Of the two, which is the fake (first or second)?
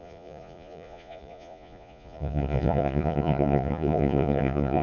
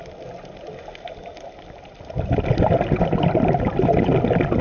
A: first